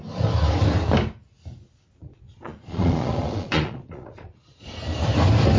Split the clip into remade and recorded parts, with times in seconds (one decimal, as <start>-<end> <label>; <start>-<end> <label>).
0.0-2.0 recorded; 2.0-4.7 remade; 4.7-5.6 recorded